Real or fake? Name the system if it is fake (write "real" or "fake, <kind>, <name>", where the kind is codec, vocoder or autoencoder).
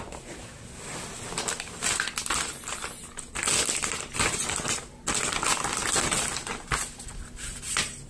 real